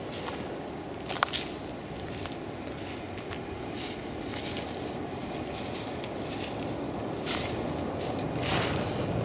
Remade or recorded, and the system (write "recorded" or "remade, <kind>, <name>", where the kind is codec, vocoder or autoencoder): recorded